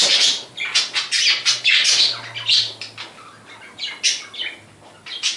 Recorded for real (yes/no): yes